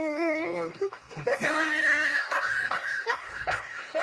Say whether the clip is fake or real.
fake